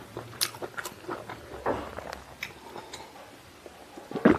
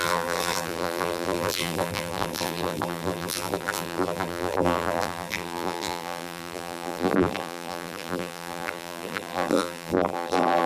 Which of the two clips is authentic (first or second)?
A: first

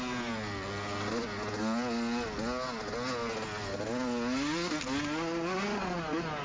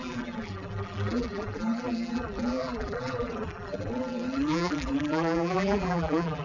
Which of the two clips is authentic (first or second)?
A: first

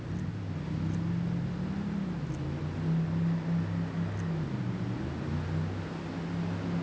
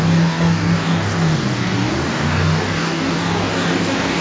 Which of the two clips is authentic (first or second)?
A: first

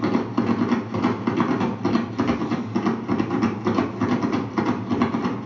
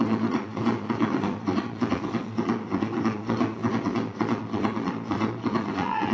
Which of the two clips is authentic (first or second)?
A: first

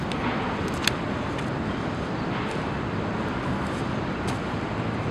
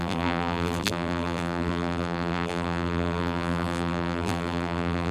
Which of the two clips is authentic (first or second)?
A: first